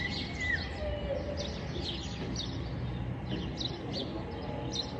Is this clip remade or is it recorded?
recorded